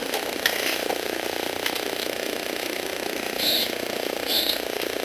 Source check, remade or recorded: remade